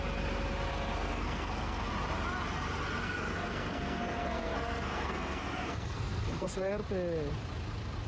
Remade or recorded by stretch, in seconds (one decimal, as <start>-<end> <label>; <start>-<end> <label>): 0.0-0.7 recorded; 0.7-1.9 remade; 1.9-3.0 recorded; 3.0-6.7 remade; 6.7-8.1 recorded